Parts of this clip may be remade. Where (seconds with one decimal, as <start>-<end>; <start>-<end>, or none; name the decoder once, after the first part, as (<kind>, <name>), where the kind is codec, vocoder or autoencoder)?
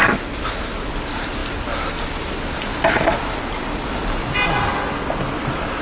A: none